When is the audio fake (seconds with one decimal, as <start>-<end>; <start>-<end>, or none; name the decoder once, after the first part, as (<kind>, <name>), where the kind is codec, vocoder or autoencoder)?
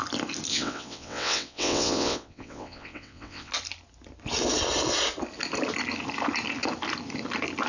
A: 0.5-3.5 (vocoder, WaveNeXt)